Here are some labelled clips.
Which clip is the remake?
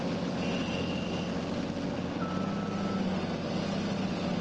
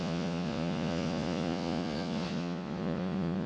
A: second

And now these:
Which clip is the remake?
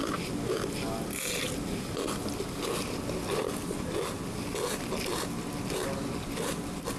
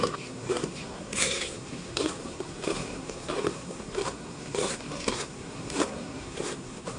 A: second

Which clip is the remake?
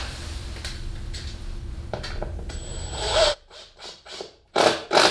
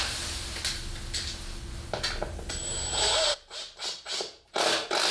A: first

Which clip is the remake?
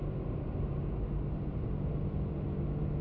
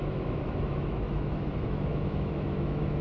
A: second